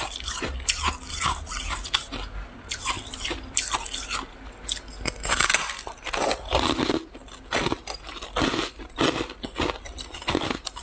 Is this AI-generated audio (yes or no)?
no